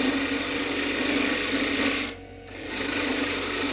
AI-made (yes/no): no